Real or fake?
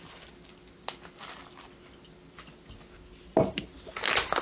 real